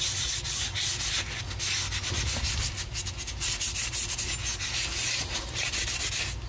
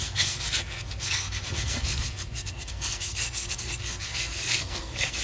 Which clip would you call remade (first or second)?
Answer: second